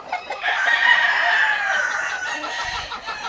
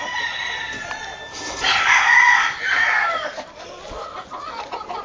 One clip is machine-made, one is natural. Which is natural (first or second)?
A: second